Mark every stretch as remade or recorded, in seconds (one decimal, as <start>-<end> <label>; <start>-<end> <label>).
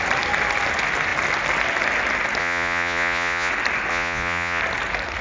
0.0-2.4 recorded; 2.4-3.5 remade; 3.5-3.9 recorded; 3.9-4.6 remade; 4.6-5.2 recorded